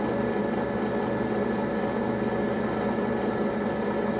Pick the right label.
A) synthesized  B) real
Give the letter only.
B